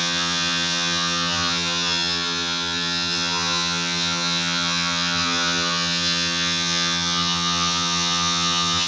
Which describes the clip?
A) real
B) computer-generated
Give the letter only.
B